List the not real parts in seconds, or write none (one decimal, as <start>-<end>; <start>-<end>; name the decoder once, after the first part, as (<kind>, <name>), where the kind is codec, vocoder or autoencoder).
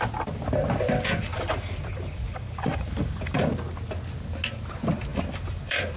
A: 1.3-3.5 (vocoder, BigVGAN v2); 5.1-6.0